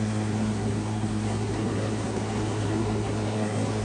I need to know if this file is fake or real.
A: fake